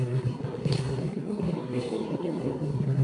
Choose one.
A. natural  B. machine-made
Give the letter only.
B